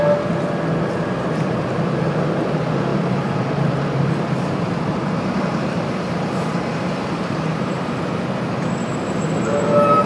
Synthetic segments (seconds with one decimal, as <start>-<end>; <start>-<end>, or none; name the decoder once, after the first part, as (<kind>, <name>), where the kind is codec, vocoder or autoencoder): 2.9-8.0 (vocoder, BigVGAN v2); 8.8-9.3